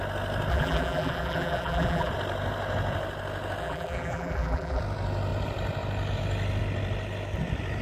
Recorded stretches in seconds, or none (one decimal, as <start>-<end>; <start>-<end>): 0.0-0.5; 2.1-3.6; 4.8-7.8